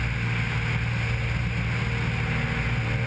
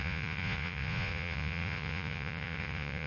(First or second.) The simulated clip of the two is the second